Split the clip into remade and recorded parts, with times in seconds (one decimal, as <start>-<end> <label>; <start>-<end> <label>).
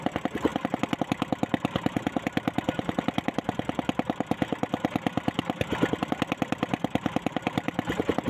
0.0-8.3 recorded